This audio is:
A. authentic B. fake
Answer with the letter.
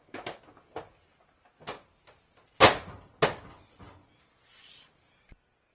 A